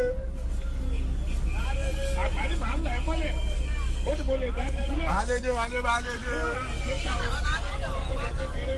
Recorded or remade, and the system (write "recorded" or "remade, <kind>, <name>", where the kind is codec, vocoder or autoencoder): remade, codec, DAC